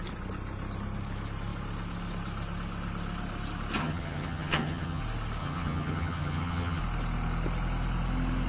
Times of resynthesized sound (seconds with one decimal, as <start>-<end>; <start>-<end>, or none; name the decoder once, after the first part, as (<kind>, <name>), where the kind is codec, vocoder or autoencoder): 3.8-5.0 (vocoder, HiFi-GAN); 5.4-6.8